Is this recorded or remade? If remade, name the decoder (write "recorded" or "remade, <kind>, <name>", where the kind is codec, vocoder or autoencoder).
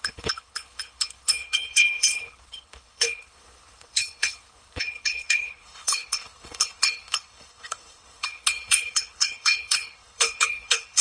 remade, codec, HILCodec